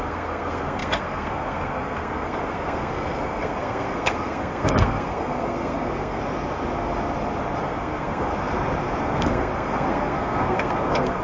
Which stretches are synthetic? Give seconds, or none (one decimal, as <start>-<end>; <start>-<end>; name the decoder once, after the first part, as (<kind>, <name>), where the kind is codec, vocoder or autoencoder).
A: 0.0-6.2 (codec, SNAC); 7.6-8.3; 9.0-11.2